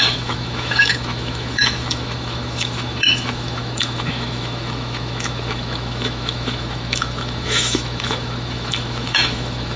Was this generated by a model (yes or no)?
yes